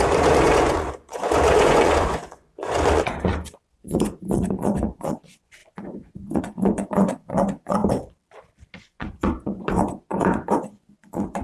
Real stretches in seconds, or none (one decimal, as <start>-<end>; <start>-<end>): 7.8-8.8